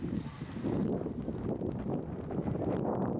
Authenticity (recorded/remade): remade